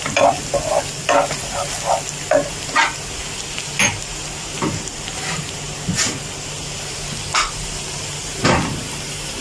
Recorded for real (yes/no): yes